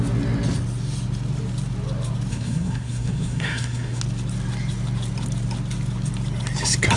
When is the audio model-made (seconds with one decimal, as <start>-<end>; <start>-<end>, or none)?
2.3-4.0

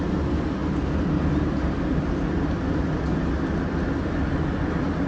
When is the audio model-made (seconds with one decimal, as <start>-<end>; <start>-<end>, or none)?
none

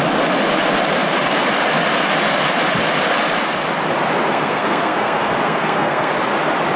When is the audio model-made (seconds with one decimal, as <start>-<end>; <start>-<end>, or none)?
4.3-6.1

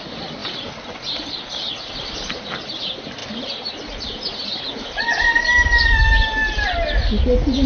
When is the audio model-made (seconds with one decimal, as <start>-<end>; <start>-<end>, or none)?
none

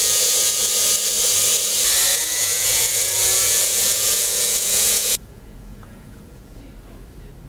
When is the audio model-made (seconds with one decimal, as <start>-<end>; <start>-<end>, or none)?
0.0-0.7; 2.1-6.6

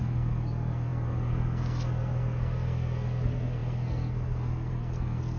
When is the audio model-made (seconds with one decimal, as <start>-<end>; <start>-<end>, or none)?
0.0-5.4